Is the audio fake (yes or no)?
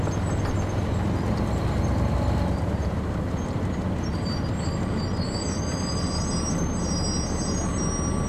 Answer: no